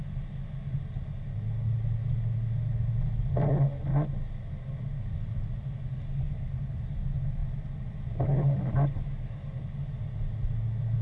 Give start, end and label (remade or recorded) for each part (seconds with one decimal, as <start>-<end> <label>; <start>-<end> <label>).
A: 0.0-11.0 recorded